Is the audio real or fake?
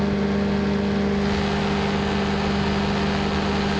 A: real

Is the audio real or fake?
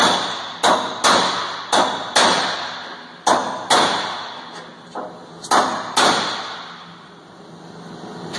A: real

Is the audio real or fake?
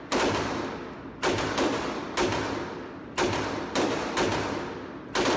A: real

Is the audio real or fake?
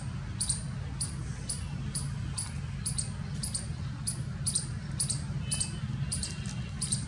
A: real